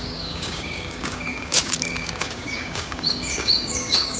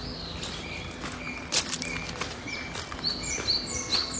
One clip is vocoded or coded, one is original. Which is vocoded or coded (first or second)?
first